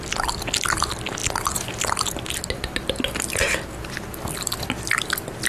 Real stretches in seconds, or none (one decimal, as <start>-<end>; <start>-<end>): 0.0-5.5